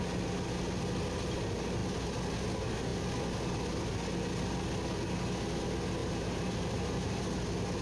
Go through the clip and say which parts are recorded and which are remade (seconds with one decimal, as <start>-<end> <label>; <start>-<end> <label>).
0.0-6.0 recorded; 6.0-7.2 remade; 7.2-7.8 recorded